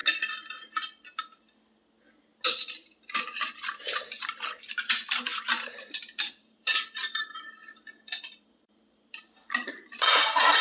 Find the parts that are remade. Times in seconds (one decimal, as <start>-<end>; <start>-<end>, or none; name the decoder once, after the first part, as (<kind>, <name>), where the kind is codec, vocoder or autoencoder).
4.6-7.6 (vocoder, BigVGAN v2); 8.2-10.6